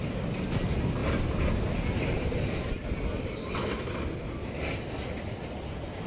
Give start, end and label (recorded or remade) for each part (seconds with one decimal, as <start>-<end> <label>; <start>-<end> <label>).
0.0-6.1 recorded